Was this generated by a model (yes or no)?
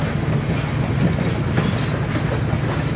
no